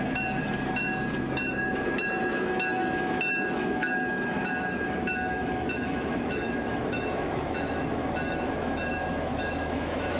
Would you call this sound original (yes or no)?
no